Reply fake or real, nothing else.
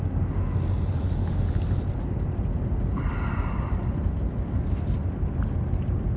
real